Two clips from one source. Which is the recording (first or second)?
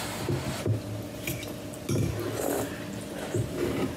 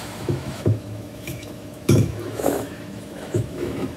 first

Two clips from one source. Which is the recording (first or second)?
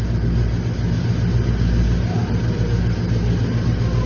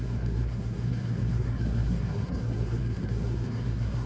first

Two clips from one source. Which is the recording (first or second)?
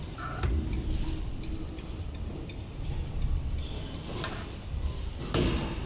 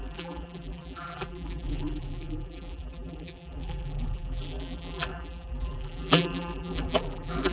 first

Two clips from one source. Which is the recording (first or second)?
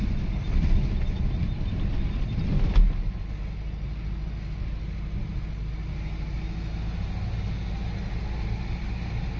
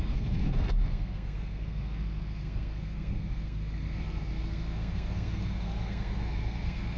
first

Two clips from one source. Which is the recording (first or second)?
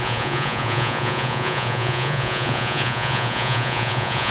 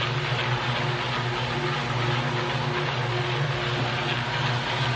second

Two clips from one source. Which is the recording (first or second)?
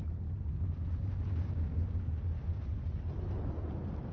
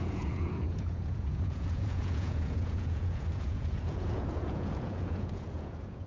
first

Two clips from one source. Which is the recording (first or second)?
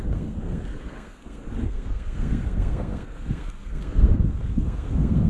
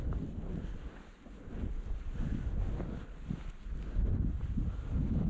second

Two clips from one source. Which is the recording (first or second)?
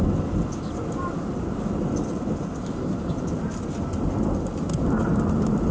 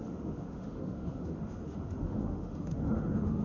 first